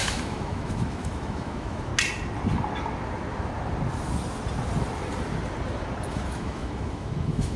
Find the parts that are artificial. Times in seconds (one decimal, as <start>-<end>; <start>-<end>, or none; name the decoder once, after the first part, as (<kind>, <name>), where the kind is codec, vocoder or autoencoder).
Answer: 0.0-1.9 (autoencoder, DAC-VAE); 6.1-7.6